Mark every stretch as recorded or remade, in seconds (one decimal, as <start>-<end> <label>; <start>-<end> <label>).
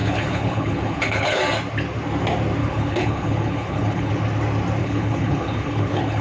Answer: 0.0-1.4 remade; 1.4-2.6 recorded; 2.6-4.1 remade; 4.1-4.8 recorded; 4.8-6.2 remade